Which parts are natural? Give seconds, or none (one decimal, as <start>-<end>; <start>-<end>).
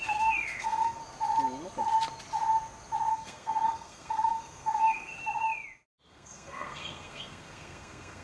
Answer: 1.0-3.1; 5.2-6.1